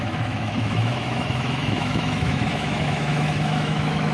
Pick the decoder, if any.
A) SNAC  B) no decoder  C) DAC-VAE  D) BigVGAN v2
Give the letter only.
C